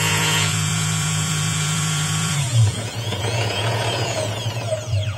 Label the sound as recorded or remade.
remade